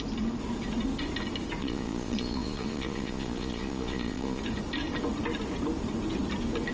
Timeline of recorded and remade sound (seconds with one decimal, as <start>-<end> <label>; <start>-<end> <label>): 0.0-1.6 recorded; 1.6-4.4 remade; 4.4-6.7 recorded

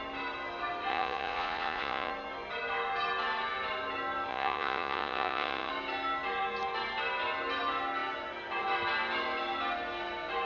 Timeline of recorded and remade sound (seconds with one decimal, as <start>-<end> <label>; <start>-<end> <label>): 0.0-0.9 recorded; 0.9-2.1 remade; 2.1-4.3 recorded; 4.3-5.7 remade; 5.7-10.5 recorded